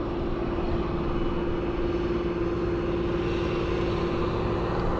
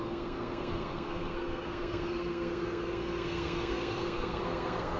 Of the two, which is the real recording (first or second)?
first